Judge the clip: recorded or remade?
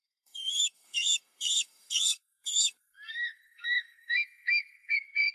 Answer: remade